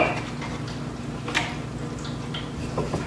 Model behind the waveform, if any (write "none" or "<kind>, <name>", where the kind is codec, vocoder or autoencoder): none